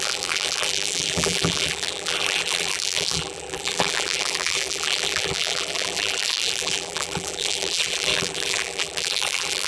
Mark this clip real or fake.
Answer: fake